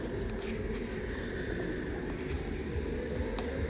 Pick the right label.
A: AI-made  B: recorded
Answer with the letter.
B